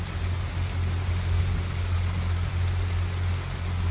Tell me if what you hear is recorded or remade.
recorded